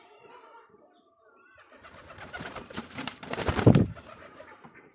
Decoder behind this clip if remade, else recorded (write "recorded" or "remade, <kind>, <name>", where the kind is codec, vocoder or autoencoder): remade, vocoder, BigVGAN v2